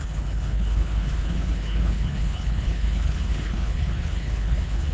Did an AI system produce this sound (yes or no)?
yes